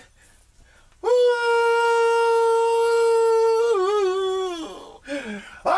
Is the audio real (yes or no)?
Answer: yes